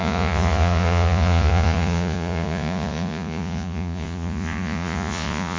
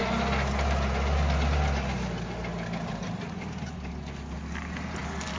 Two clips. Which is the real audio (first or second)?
second